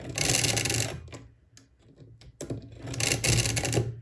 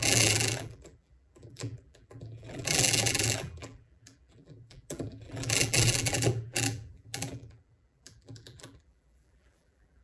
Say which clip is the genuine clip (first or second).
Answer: first